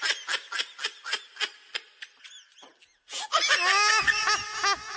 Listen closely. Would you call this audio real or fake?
real